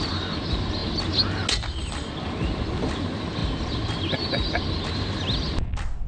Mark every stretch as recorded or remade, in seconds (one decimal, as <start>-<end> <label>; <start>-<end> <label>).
0.0-6.1 recorded